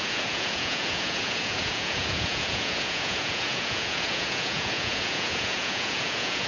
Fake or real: fake